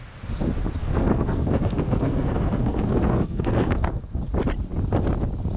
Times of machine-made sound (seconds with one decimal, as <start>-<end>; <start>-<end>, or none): 0.8-4.2